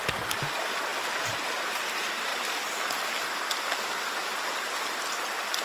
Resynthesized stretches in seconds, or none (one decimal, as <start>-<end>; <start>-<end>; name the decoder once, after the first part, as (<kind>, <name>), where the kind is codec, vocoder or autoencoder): 0.0-0.9 (vocoder, BigVGAN v2); 1.5-2.3; 3.9-4.3; 5.1-5.6